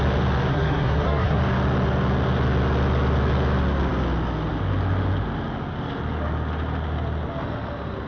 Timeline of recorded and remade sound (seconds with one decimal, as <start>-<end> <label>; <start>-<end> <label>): 0.0-0.5 recorded; 0.5-1.4 remade; 1.4-8.1 recorded